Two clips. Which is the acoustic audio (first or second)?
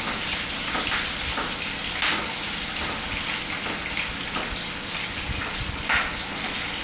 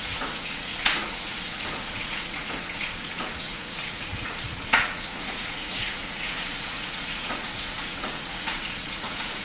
first